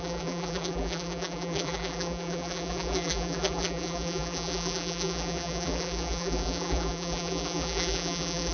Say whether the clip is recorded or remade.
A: remade